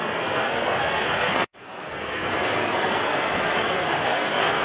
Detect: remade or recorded remade